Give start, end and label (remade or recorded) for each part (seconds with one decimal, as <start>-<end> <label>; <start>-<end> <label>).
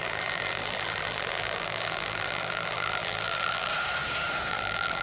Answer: 0.0-3.7 remade; 3.7-4.5 recorded; 4.5-5.0 remade